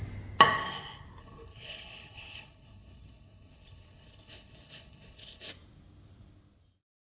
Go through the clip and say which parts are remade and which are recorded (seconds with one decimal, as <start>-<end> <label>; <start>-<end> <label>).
0.0-1.2 recorded; 1.2-5.5 remade; 5.5-7.1 recorded

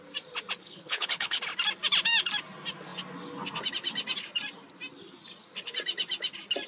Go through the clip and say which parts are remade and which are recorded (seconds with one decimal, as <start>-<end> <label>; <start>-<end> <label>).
0.0-0.6 recorded; 0.6-1.4 remade; 1.4-6.7 recorded

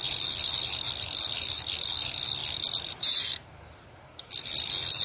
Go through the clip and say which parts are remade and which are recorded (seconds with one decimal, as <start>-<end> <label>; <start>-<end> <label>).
0.0-5.0 recorded

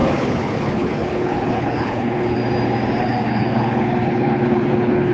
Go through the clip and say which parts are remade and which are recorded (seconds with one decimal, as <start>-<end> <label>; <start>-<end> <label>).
0.0-2.4 remade; 2.4-3.0 recorded; 3.0-5.1 remade

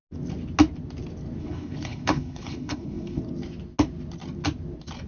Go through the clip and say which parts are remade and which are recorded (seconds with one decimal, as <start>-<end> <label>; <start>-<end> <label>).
0.0-1.4 recorded; 1.4-3.2 remade; 3.2-5.1 recorded

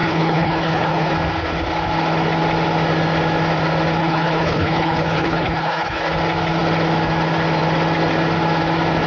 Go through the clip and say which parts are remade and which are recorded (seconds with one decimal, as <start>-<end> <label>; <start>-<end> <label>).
0.0-1.1 remade; 1.1-4.0 recorded; 4.0-6.0 remade; 6.0-9.1 recorded

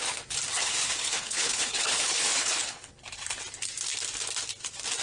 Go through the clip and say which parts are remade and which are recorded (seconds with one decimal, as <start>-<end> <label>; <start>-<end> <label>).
0.0-0.5 recorded; 0.5-2.9 remade; 2.9-5.0 recorded